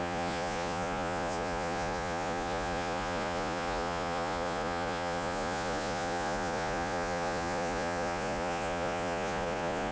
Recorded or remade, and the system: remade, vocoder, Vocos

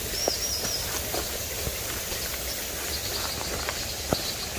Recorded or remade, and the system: recorded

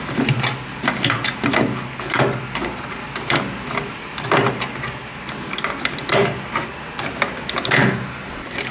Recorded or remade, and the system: recorded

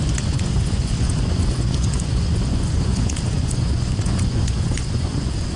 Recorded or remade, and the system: remade, vocoder, Vocos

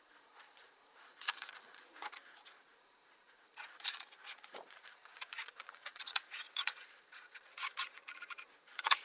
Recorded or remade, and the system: remade, vocoder, Vocos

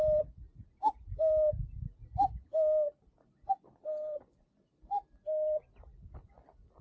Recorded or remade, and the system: recorded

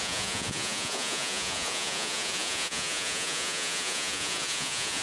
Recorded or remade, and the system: remade, vocoder, Vocos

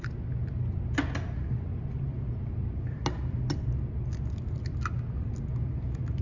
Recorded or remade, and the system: recorded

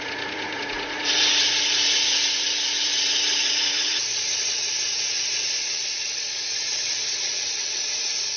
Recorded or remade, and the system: remade, vocoder, Vocos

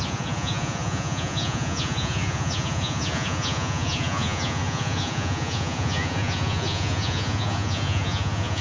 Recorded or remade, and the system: remade, vocoder, Vocos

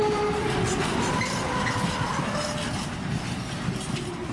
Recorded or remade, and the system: recorded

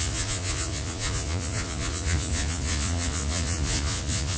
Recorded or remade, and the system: remade, vocoder, Vocos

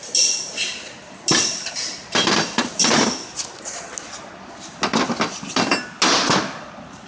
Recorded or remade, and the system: recorded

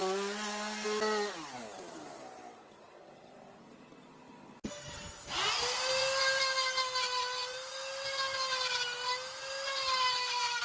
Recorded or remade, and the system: recorded